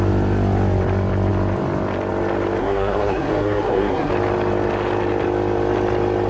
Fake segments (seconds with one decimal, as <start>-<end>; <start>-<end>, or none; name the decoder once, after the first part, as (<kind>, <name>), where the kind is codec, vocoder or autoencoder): 2.6-4.1 (codec, SNAC)